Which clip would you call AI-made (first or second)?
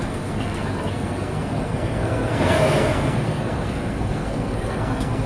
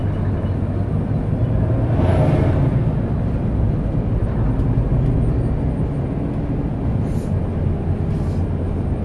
first